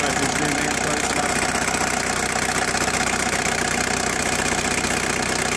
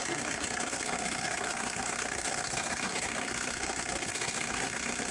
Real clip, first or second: first